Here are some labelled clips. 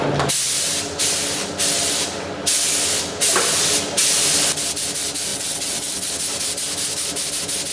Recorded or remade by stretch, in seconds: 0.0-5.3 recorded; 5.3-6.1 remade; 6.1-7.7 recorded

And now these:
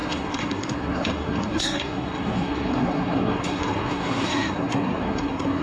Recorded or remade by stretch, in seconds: 0.0-5.6 remade

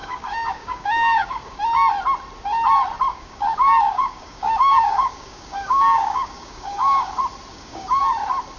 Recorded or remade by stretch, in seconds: 0.0-1.6 remade; 1.6-3.1 recorded; 3.1-7.1 remade; 7.1-7.5 recorded; 7.5-8.0 remade; 8.0-8.6 recorded